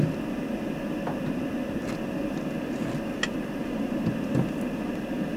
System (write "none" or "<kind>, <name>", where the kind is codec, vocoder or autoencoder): none